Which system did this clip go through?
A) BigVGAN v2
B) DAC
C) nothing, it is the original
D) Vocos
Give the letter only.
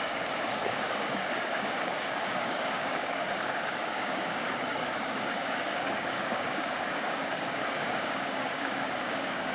B